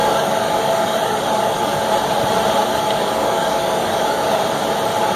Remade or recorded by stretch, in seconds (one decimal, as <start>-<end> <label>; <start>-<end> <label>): 0.0-1.8 remade; 1.8-2.6 recorded; 2.6-4.4 remade; 4.4-5.2 recorded